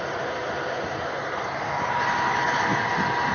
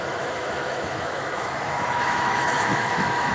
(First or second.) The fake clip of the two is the second